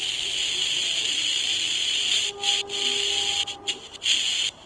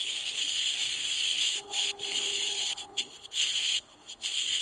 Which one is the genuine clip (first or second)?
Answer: first